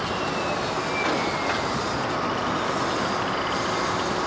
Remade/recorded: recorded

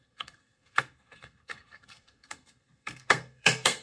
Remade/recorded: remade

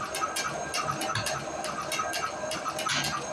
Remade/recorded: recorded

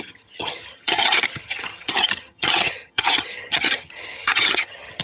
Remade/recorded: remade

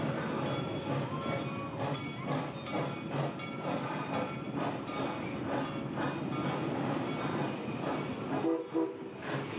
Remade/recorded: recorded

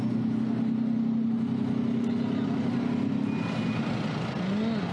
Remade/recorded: recorded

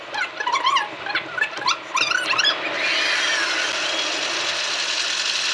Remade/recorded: recorded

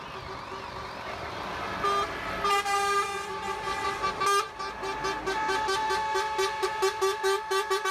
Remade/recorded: recorded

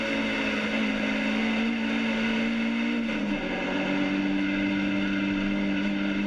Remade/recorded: recorded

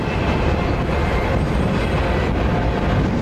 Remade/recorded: recorded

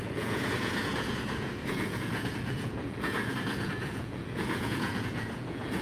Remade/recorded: remade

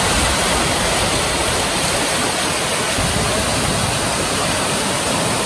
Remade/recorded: recorded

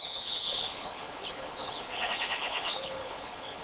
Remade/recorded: remade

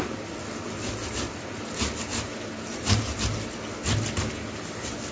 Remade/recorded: recorded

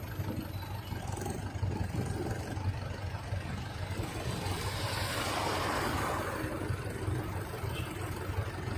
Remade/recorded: recorded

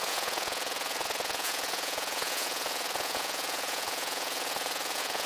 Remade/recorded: remade